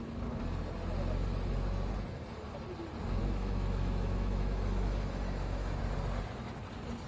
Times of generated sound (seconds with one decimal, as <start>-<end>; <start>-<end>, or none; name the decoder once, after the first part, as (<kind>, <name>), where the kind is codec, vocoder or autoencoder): 3.2-5.8 (autoencoder, DAC-VAE)